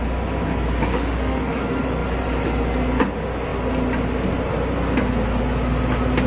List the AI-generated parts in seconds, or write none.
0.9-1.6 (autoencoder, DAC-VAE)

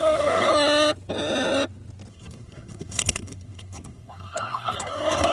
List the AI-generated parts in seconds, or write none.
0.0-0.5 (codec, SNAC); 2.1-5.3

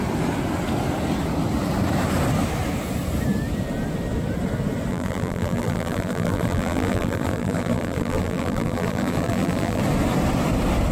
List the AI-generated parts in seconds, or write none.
4.9-9.8 (vocoder, BigVGAN v2)

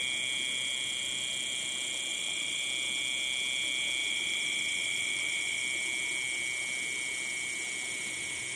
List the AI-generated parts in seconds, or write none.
2.1-2.6 (vocoder, BigVGAN v2); 4.0-5.6

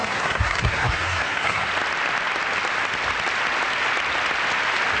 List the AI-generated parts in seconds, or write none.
0.0-1.7 (codec, SNAC)

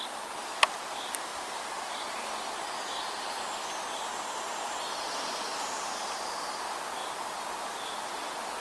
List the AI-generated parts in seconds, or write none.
1.3-1.9 (vocoder, BigVGAN v2); 7.0-8.0